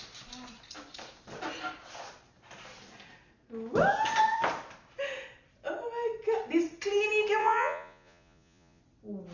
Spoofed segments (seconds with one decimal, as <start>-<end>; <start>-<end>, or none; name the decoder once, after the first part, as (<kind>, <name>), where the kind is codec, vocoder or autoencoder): 7.4-8.8 (vocoder, Vocos)